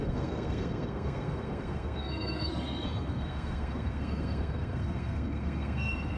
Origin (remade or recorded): remade